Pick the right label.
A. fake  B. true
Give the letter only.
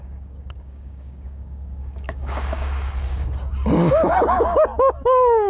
A